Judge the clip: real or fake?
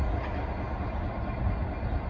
real